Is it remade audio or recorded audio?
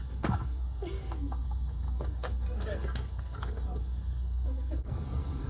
remade